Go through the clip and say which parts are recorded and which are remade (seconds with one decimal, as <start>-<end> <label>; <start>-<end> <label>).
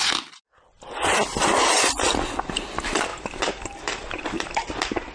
0.0-3.1 recorded; 3.1-4.5 remade; 4.5-5.1 recorded